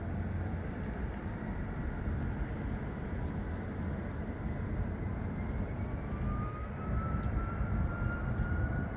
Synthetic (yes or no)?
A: yes